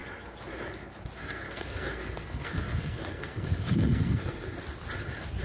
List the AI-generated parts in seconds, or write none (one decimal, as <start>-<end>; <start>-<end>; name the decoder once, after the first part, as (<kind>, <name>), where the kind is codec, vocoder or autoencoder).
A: 1.2-4.4 (codec, SNAC)